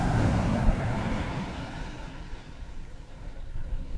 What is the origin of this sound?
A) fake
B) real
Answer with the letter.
A